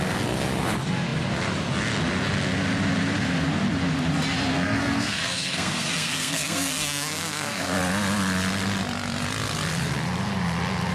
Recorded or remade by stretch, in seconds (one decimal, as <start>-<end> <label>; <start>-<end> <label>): 0.0-4.5 recorded; 4.5-7.8 remade; 7.8-10.9 recorded